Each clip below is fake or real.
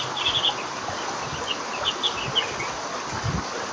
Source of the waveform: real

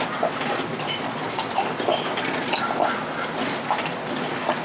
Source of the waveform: real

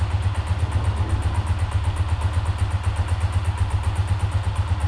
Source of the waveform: real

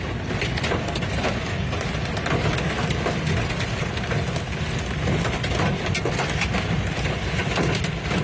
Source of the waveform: real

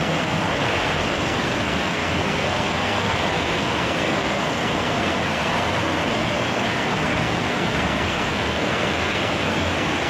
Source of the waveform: fake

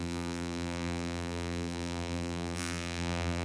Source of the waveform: fake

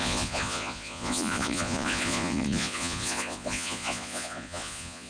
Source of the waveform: fake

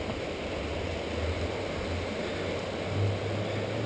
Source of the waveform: real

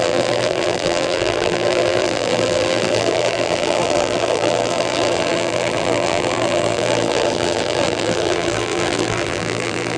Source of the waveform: fake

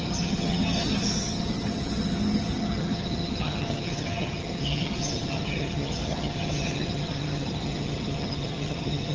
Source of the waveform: fake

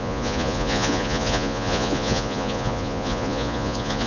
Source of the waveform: fake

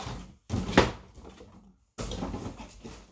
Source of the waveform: real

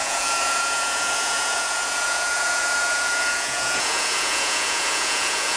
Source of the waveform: fake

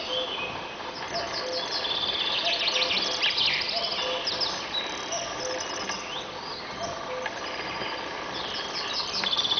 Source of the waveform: real